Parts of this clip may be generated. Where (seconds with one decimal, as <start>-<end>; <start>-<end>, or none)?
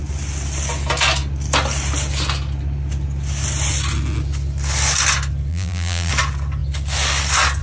5.5-6.1